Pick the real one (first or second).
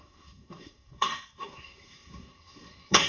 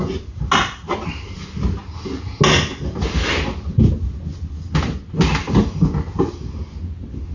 second